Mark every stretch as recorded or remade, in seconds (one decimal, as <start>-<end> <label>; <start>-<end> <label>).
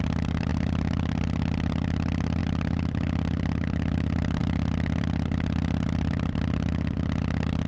0.0-7.7 recorded